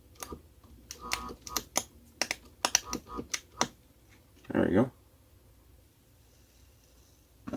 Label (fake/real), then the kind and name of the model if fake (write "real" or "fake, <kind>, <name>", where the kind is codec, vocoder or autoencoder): real